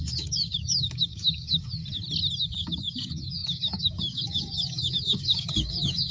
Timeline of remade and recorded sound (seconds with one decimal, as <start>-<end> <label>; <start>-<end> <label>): 0.0-1.8 remade; 1.8-2.4 recorded; 2.4-6.1 remade